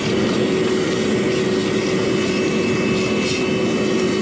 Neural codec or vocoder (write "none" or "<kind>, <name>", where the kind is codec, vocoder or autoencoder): none